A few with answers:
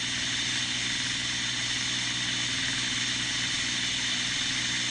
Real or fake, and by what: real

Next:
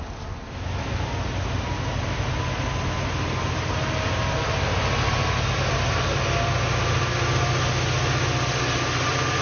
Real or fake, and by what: real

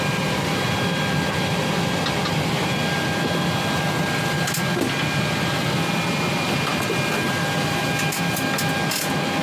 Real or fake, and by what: real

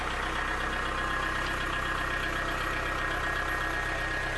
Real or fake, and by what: real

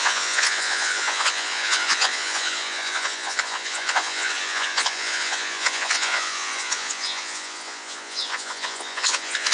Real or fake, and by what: fake, vocoder, Vocos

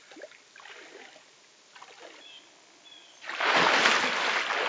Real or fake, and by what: real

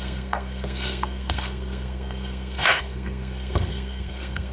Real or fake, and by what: fake, codec, SNAC